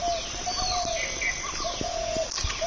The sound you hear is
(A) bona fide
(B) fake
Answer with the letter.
A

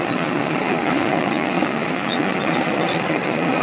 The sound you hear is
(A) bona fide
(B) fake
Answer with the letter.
B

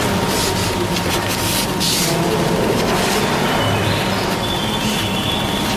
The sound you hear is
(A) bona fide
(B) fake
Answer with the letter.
A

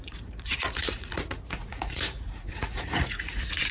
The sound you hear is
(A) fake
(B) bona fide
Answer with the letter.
A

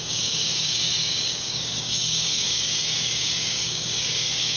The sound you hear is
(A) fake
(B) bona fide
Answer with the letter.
A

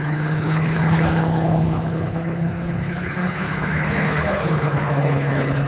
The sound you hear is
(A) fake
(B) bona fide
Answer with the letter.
A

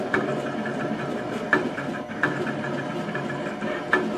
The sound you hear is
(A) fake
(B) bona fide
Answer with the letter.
B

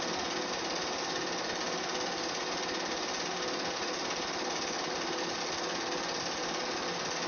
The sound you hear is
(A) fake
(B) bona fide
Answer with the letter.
B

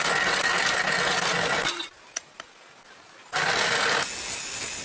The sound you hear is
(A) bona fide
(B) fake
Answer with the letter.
A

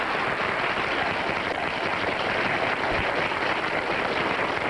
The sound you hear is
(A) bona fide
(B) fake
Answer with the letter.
A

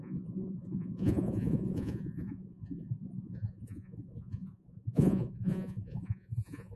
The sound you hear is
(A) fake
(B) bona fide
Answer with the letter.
A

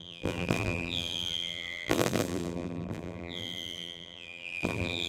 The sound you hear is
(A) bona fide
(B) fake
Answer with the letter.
B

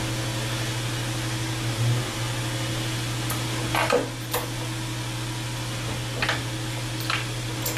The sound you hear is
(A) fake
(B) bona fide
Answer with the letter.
B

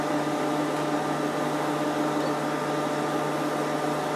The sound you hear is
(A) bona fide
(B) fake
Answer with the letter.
A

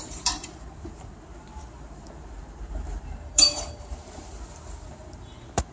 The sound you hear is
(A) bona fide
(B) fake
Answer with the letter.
B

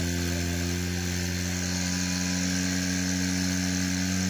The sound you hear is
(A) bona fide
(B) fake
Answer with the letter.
A